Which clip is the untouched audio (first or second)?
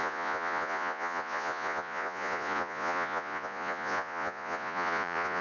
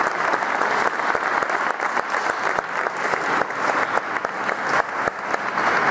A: second